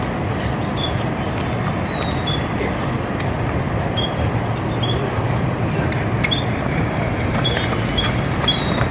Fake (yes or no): no